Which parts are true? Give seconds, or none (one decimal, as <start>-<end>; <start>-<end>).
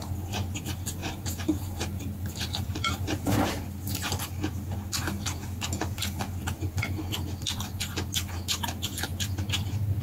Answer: 0.0-1.0; 3.5-10.0